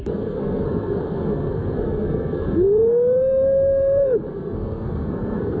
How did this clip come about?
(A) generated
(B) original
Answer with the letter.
A